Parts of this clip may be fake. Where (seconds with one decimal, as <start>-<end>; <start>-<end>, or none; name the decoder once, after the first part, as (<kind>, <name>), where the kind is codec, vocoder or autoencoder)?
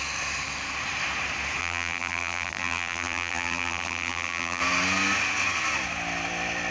1.6-4.6 (vocoder, BigVGAN v2)